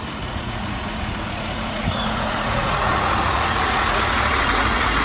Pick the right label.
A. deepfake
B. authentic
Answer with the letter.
A